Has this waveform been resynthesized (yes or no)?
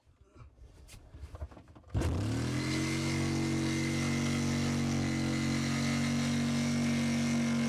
no